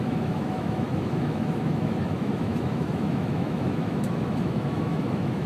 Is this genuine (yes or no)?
no